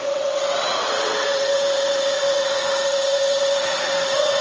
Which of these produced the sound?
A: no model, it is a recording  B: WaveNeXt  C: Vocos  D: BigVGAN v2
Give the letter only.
B